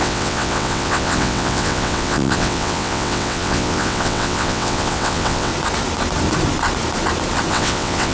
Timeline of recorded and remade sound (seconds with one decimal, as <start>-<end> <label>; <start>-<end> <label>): 0.0-5.5 remade; 5.5-7.5 recorded; 7.5-8.1 remade